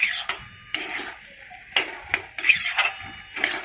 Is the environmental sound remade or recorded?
recorded